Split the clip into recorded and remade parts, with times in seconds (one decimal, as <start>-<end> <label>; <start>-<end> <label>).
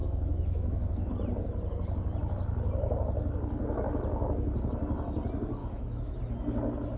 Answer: 0.0-1.1 remade; 1.1-5.6 recorded; 5.6-6.2 remade; 6.2-7.0 recorded